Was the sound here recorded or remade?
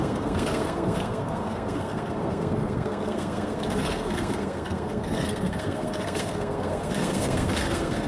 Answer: remade